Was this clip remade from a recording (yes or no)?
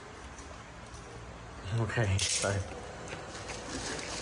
no